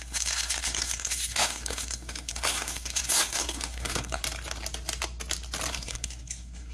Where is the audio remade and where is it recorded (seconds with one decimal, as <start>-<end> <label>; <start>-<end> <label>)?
0.0-4.2 remade; 4.2-5.7 recorded; 5.7-6.7 remade